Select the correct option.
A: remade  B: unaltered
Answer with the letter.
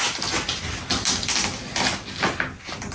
B